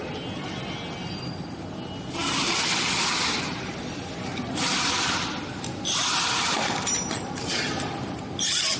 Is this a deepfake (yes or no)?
no